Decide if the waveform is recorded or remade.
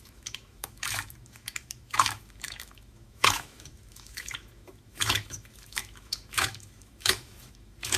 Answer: remade